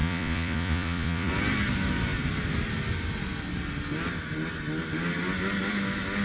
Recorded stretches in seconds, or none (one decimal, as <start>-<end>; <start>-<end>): 1.3-6.2